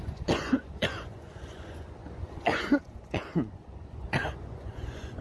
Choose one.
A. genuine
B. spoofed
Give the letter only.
B